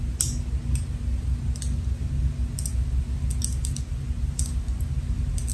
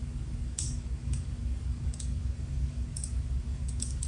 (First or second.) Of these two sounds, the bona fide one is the first